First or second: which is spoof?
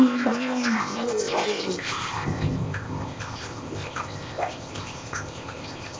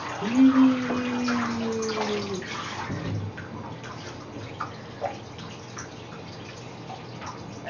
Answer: first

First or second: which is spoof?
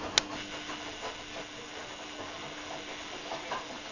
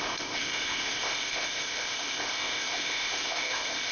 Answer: second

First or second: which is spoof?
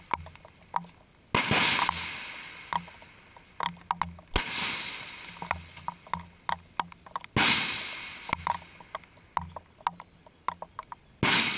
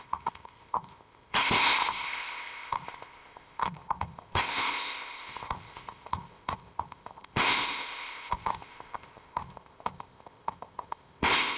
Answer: second